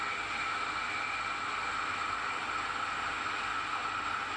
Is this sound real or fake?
real